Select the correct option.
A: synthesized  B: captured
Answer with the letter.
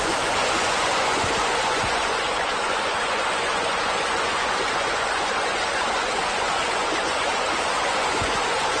A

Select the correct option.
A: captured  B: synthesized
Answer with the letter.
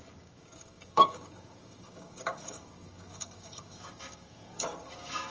B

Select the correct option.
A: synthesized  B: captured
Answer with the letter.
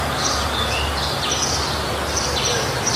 B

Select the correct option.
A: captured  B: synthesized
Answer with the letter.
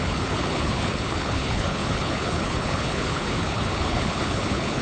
B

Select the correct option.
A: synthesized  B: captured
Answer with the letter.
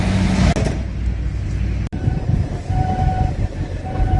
B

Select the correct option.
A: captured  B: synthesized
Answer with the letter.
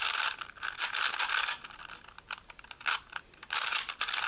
A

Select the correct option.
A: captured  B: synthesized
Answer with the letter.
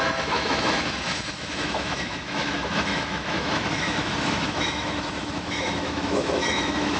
B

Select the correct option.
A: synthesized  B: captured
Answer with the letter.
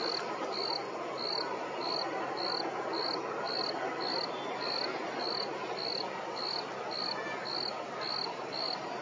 B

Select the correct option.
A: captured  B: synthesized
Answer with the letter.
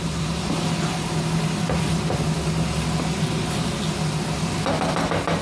A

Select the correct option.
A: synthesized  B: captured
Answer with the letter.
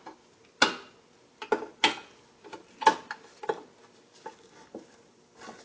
B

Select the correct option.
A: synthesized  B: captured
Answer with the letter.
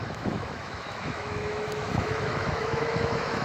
A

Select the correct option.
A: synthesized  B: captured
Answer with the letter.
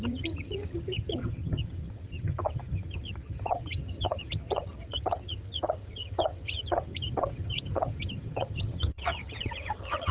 A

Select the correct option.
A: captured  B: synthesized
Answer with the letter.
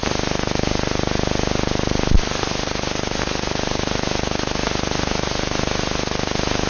A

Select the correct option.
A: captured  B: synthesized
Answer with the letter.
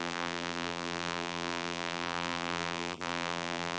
B